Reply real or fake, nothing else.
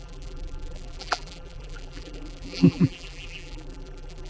fake